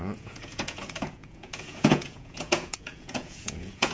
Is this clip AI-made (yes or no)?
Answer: yes